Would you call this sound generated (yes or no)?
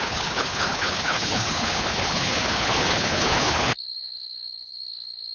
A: yes